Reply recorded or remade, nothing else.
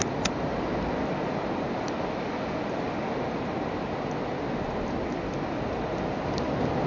recorded